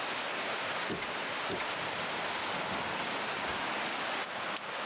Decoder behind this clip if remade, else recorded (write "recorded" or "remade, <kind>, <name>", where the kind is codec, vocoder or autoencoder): recorded